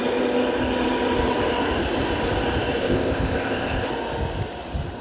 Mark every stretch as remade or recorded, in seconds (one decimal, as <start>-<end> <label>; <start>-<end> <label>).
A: 0.0-2.8 recorded; 2.8-3.9 remade; 3.9-5.0 recorded